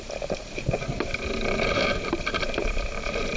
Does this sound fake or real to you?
fake